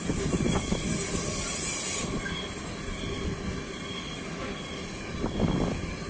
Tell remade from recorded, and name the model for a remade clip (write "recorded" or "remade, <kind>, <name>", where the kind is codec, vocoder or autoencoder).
recorded